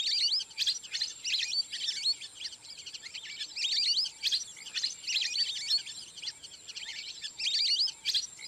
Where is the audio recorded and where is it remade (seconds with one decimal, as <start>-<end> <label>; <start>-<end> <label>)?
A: 0.0-6.9 recorded; 6.9-7.4 remade; 7.4-8.5 recorded